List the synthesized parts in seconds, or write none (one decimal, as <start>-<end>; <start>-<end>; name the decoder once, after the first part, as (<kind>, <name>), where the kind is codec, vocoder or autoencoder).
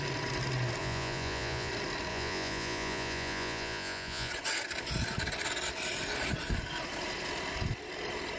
0.8-1.7 (vocoder, Vocos); 2.1-4.3